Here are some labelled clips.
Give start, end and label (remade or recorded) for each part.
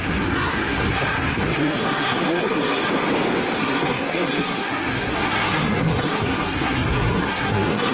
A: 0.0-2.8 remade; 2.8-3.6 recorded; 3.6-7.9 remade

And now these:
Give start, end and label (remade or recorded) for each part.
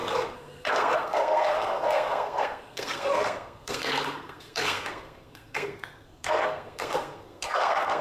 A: 0.0-8.0 remade